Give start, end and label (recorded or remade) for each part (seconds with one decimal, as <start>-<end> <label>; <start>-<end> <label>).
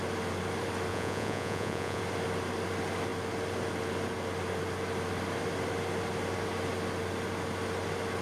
0.0-0.9 recorded; 0.9-2.0 remade; 2.0-8.2 recorded